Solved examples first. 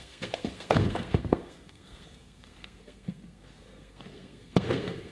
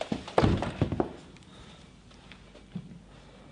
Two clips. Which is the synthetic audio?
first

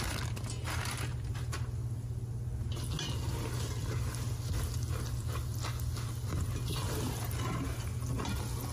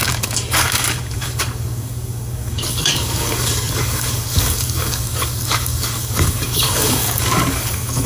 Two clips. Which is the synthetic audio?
second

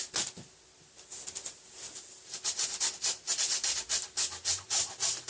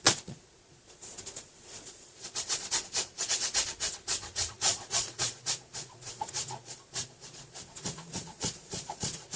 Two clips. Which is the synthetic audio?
second